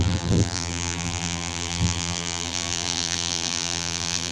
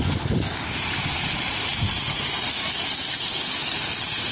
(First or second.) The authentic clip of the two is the second